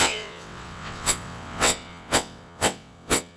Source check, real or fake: fake